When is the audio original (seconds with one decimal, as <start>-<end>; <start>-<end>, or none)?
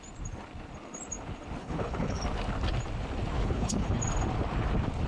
0.0-1.6; 2.2-3.4; 4.0-5.1